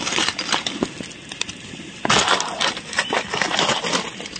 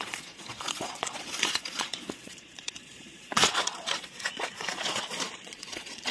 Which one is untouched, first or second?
first